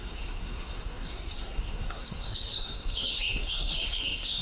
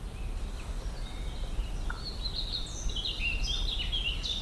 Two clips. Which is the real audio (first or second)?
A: second